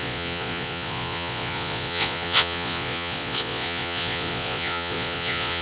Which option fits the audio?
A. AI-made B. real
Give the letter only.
A